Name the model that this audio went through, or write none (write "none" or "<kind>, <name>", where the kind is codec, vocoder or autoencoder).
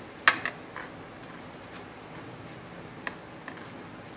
none